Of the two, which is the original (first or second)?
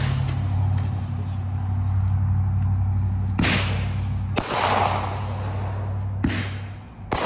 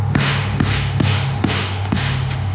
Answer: first